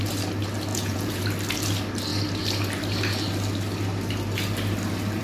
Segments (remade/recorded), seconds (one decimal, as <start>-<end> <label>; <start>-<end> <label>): 0.0-0.7 recorded; 0.7-1.2 remade; 1.2-5.2 recorded